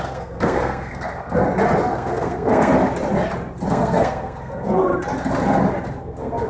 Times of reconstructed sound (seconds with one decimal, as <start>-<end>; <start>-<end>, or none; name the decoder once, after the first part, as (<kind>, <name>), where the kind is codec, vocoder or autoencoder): 0.0-1.4 (codec, SNAC); 1.9-2.7; 3.7-4.9; 6.0-6.5